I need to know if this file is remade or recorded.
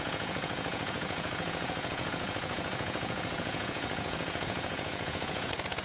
remade